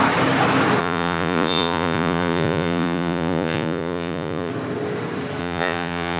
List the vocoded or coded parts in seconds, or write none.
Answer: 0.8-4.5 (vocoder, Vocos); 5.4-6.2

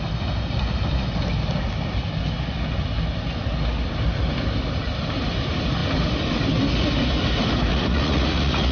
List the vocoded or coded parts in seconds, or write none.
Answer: 7.7-8.7 (vocoder, Vocos)

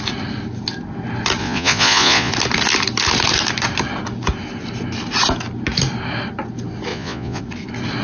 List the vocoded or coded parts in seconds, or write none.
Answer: 1.4-2.3 (vocoder, Vocos); 6.9-7.4